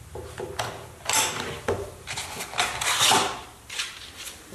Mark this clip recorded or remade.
recorded